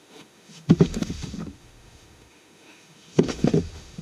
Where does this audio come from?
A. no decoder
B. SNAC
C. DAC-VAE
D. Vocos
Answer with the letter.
C